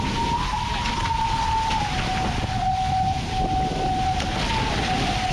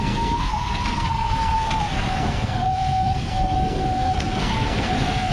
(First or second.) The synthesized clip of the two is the second